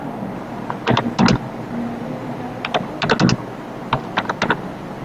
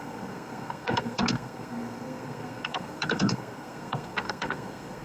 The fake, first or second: second